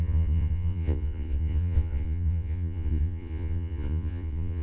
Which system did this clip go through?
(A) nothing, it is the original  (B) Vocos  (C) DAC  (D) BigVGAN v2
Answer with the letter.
B